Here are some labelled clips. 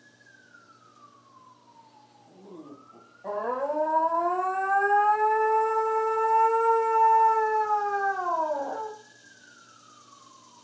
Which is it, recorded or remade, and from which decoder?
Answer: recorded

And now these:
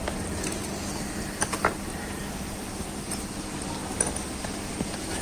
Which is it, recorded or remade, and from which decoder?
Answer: recorded